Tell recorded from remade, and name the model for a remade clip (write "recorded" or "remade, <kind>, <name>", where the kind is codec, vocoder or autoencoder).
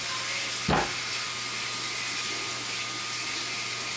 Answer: recorded